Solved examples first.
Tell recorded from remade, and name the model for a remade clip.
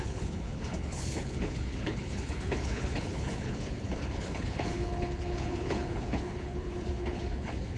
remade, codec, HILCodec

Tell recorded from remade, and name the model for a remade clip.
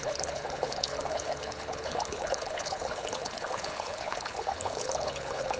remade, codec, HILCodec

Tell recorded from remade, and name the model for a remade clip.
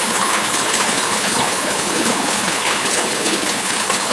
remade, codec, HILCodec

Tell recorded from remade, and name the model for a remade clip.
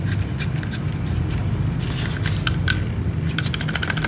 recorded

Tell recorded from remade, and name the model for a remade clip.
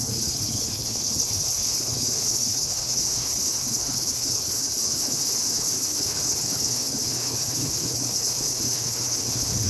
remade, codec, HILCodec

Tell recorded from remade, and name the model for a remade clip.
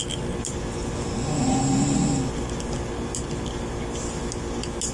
recorded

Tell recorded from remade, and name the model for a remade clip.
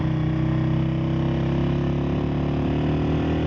recorded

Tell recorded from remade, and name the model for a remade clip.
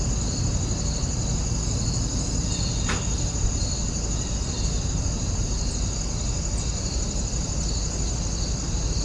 recorded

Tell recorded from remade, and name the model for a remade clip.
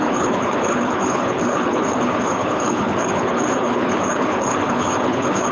remade, codec, HILCodec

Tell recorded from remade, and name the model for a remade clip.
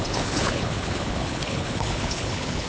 remade, codec, HILCodec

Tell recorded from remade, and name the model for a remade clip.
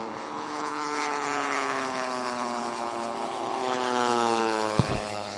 remade, codec, HILCodec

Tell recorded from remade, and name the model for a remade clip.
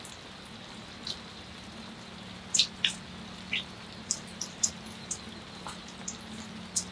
recorded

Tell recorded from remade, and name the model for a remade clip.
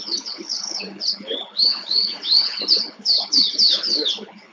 remade, codec, HILCodec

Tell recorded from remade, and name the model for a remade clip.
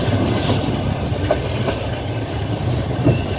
recorded